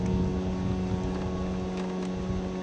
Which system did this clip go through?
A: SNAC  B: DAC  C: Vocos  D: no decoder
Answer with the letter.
D